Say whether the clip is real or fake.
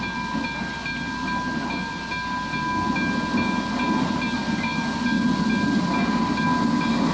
real